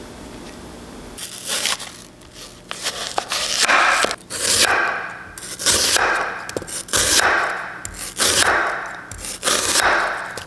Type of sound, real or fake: real